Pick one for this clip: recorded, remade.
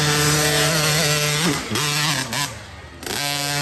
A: recorded